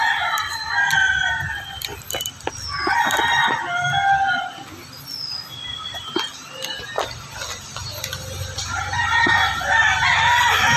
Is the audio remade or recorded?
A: recorded